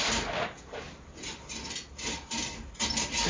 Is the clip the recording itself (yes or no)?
yes